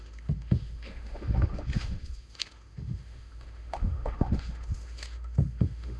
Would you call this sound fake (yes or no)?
yes